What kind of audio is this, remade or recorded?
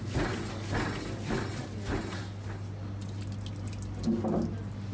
recorded